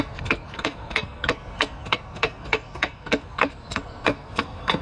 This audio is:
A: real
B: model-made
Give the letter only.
B